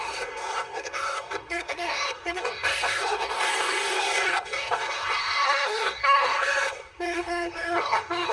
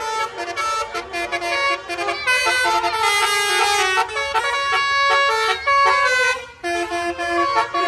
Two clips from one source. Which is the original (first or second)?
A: second